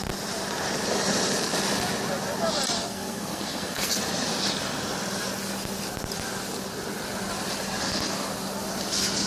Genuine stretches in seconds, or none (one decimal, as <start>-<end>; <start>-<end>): 0.0-2.8; 3.9-9.3